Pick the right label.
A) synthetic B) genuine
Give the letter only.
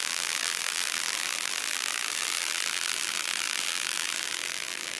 A